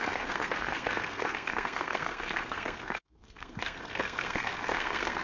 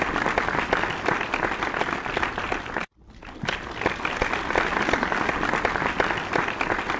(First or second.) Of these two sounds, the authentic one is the second